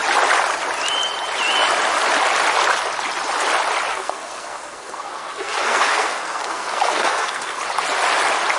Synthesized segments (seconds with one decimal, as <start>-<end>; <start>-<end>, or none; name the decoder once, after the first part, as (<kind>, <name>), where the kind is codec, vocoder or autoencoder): 3.9-7.6 (codec, SNAC)